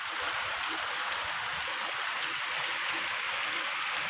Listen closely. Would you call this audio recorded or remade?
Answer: recorded